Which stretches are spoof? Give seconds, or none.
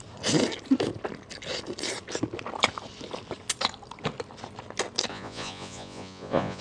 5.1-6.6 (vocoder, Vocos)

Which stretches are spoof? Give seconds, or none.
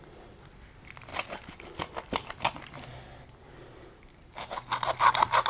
none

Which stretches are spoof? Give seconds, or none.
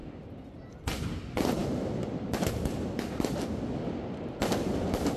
none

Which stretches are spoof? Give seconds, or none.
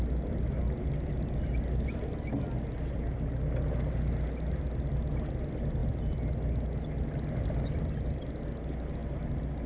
none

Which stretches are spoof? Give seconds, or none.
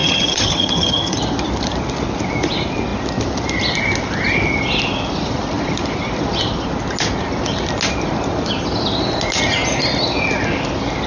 0.0-1.2 (vocoder, HiFi-GAN)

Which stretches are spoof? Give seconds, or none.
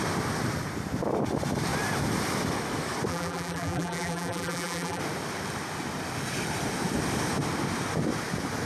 3.1-5.0 (vocoder, BigVGAN v2)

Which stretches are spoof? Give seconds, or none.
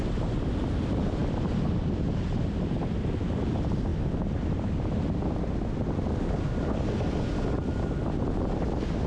none